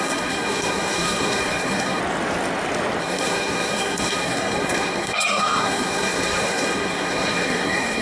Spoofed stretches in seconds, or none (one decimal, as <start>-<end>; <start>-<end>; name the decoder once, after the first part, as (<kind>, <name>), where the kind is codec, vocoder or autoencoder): 0.0-2.0 (codec, SNAC); 3.0-8.0